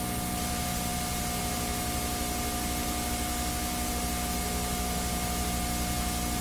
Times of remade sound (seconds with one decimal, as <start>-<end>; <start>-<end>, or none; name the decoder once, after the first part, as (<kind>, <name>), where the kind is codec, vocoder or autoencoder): none